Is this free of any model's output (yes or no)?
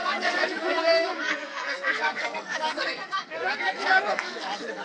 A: no